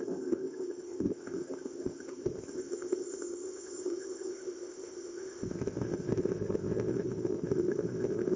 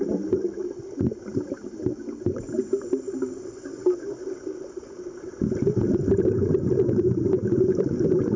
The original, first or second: second